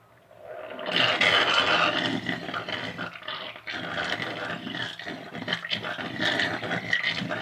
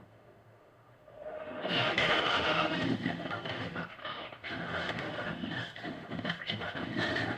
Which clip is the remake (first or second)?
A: second